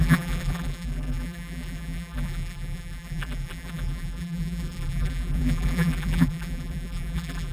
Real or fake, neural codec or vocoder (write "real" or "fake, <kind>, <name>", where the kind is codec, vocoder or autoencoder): fake, vocoder, BigVGAN v2